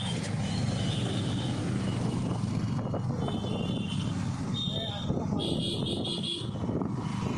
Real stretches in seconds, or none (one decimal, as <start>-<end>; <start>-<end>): 1.1-1.6; 2.5-7.4

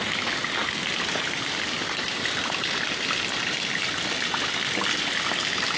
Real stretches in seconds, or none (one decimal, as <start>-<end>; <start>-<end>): 0.0-5.8

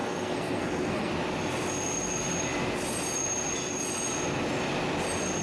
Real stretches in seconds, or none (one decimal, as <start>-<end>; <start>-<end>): 1.1-5.4

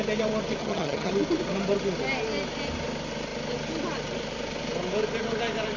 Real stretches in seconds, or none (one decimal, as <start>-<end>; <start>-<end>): 0.0-0.6; 1.1-5.8